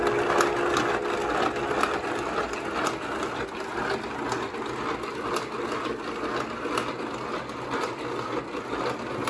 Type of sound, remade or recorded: recorded